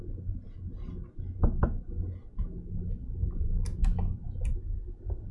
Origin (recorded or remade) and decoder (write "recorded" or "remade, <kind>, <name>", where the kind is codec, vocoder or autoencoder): recorded